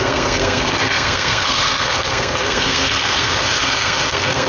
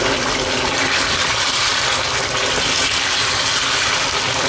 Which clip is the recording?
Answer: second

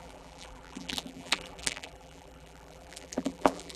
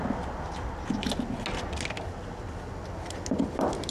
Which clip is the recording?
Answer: second